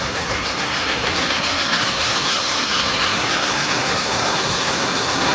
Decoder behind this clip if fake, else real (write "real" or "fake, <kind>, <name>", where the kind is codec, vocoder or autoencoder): fake, codec, SNAC